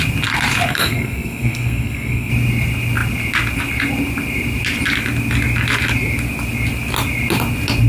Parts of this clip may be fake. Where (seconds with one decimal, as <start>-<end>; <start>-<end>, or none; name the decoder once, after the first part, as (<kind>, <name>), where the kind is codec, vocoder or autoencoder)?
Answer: 0.7-2.3 (codec, SNAC)

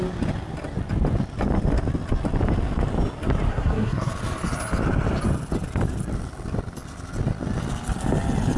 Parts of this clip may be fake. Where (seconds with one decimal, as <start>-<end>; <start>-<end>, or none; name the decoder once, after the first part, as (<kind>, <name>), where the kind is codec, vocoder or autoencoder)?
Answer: 3.5-4.1 (codec, SNAC)

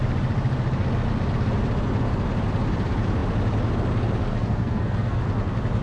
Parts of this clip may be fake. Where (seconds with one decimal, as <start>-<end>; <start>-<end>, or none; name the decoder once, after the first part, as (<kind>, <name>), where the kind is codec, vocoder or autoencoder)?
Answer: 4.3-5.2 (codec, SNAC)

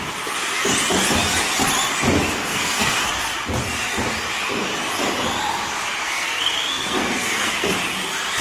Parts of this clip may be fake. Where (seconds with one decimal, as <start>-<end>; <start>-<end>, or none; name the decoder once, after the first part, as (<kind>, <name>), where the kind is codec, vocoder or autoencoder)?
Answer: 2.5-3.1 (codec, SNAC); 6.0-7.7